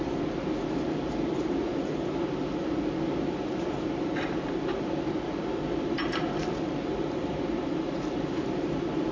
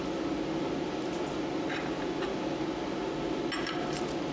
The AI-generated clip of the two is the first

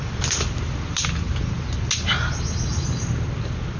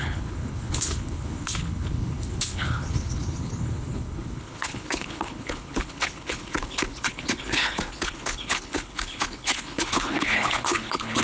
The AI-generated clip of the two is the second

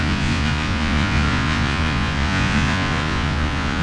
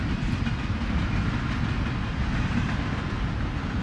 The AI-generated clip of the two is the first